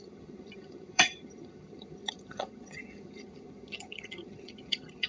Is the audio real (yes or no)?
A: no